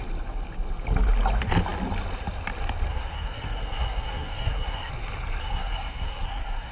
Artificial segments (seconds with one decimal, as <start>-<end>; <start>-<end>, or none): 2.9-4.9; 5.4-6.7